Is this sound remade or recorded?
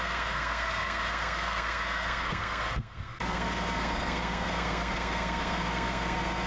remade